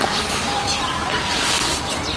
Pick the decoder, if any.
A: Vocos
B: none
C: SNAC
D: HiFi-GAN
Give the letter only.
B